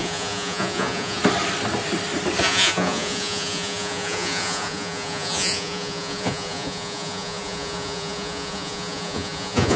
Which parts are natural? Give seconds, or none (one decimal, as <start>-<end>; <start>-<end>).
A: 1.2-2.4